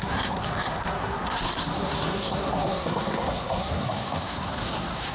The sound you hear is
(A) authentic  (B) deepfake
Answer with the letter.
B